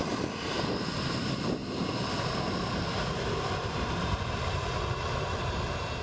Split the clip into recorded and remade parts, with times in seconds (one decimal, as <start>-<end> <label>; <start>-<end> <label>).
0.0-6.0 recorded